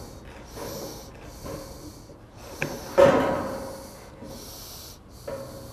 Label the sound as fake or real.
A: real